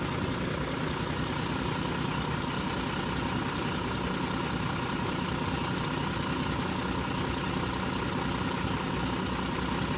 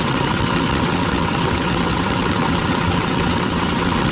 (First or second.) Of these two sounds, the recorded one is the first